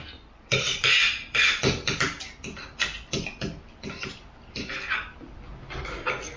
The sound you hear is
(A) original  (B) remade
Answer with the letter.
A